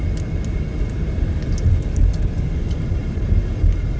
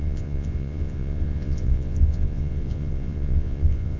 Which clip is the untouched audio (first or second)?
first